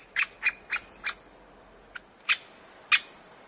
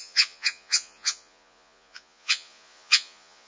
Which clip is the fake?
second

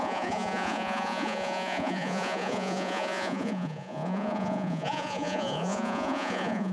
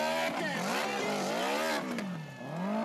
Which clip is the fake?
first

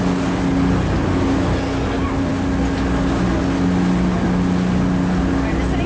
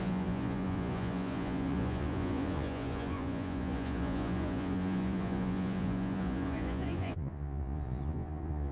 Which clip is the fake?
second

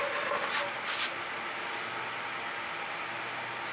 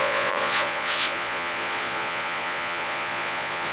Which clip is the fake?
second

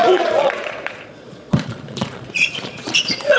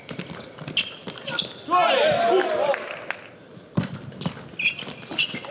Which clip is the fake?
first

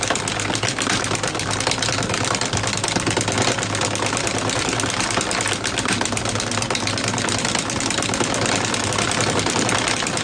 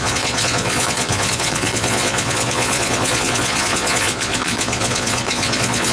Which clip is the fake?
second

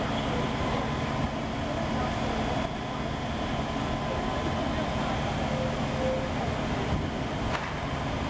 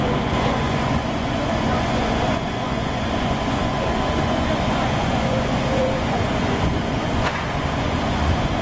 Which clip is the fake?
second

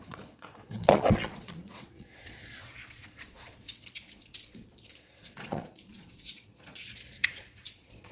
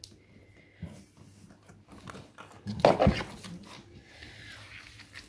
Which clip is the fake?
first